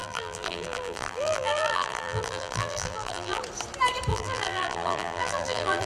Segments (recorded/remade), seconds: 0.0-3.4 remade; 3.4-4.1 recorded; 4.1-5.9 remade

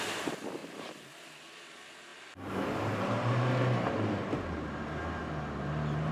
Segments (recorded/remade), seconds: 0.0-0.6 recorded; 0.6-1.1 remade; 1.1-2.1 recorded; 2.1-4.8 remade; 4.8-6.1 recorded